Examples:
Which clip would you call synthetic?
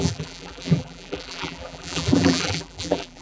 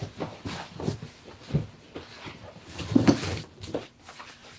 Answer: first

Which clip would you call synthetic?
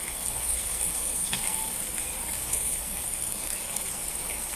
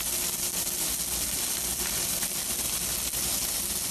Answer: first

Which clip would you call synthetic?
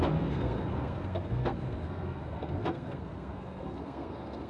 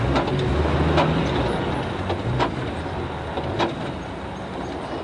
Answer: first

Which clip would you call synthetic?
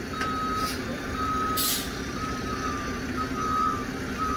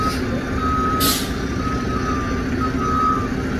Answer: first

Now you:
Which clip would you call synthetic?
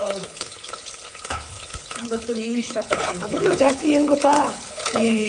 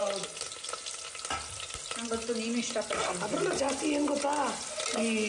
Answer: first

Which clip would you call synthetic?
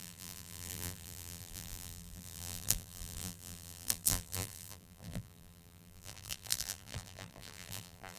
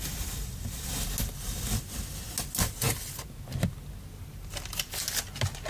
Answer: first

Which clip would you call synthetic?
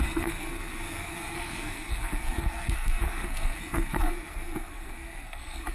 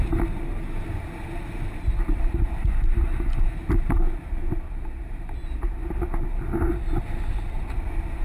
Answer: first